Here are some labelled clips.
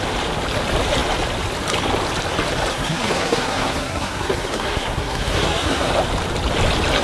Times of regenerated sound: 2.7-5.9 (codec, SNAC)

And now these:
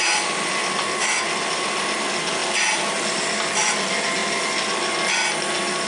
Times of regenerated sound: none

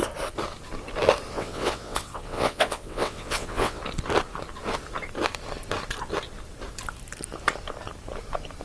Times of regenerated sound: 1.3-3.8 (vocoder, WaveNeXt)

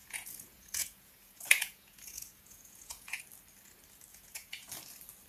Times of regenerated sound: 0.0-3.2 (vocoder, Vocos); 4.1-4.7

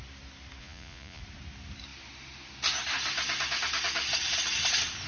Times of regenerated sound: 0.6-1.2 (vocoder, Vocos)